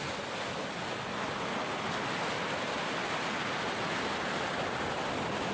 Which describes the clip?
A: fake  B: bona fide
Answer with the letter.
B